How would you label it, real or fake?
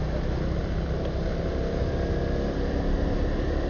real